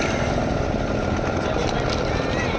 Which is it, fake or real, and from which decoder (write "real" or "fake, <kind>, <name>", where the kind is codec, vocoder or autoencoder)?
real